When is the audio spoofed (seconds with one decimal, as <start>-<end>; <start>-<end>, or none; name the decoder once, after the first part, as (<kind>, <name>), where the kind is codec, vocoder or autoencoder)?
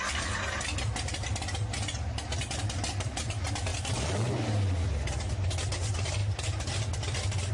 none